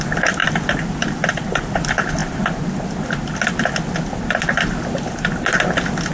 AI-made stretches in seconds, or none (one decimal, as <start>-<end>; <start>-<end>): 0.4-1.6